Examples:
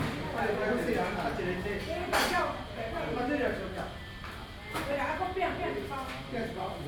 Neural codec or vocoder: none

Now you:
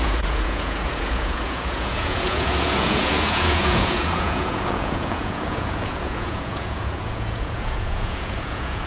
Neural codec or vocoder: vocoder, Vocos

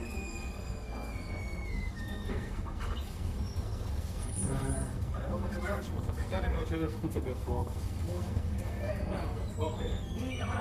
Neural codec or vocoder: codec, SNAC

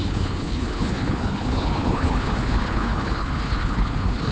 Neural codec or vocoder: codec, HILCodec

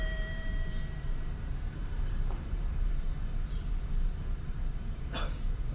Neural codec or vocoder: vocoder, BigVGAN v2